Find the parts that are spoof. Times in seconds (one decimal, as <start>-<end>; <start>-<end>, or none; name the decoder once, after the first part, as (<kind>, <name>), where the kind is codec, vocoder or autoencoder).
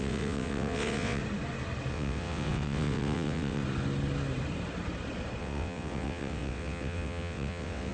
0.0-1.2 (vocoder, WaveNeXt); 1.9-3.6; 5.4-7.9